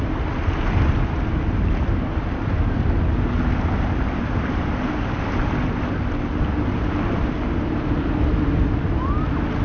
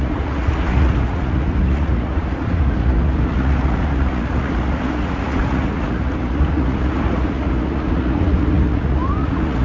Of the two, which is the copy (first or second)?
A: second